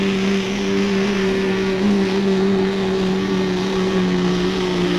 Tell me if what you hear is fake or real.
fake